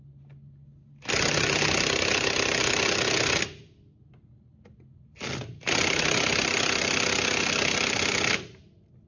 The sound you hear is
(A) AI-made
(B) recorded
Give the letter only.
B